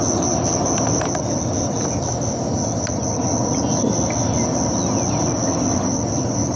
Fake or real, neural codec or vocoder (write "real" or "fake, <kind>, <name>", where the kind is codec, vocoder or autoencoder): real